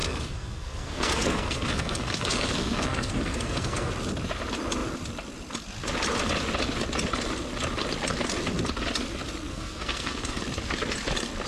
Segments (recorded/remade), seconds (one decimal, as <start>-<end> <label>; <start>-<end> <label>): 0.0-3.9 remade; 3.9-9.5 recorded; 9.5-10.4 remade; 10.4-11.5 recorded